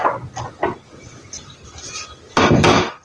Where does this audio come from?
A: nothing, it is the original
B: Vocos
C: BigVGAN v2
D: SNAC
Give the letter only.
A